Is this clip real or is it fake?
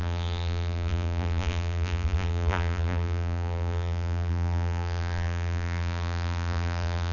fake